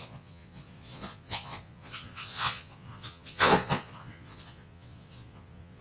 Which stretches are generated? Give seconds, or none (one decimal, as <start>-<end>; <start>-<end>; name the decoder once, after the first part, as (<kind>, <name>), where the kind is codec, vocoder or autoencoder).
0.0-5.8 (vocoder, Vocos)